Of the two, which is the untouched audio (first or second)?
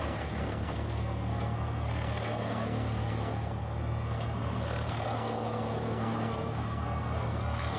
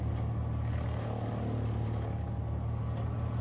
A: second